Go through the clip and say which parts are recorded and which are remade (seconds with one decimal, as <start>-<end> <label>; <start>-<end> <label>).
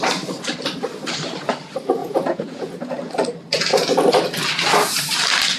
0.0-2.0 recorded; 2.0-3.0 remade; 3.0-5.6 recorded